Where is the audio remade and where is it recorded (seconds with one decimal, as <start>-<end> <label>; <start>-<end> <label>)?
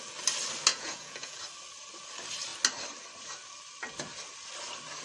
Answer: 0.0-0.7 recorded; 0.7-1.4 remade; 1.4-5.0 recorded